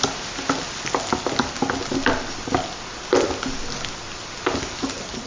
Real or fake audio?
real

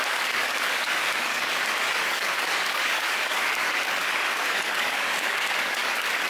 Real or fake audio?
fake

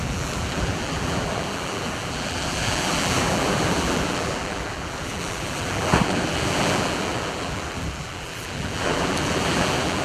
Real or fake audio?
fake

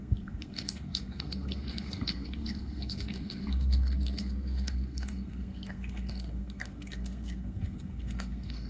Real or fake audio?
fake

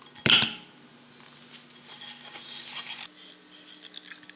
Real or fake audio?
real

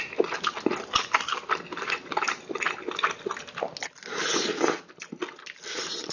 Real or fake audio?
real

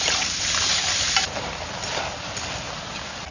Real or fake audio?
real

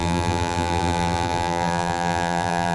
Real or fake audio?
fake